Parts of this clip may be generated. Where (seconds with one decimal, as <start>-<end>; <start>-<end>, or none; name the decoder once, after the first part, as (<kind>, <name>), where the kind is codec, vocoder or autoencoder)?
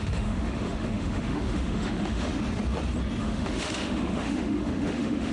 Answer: 0.0-2.3 (autoencoder, DAC-VAE); 3.2-5.3